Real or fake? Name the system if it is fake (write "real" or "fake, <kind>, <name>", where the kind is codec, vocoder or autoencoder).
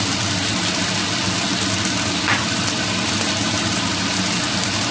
real